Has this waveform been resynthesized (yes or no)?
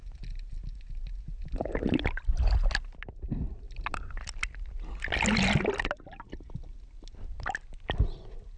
no